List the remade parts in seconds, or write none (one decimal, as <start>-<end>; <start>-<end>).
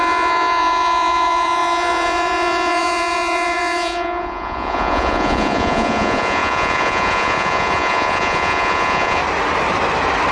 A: 0.0-9.2